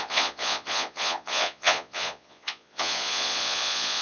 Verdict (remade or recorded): remade